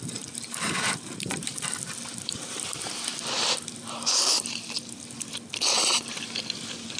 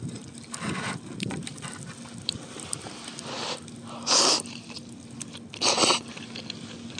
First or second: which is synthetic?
first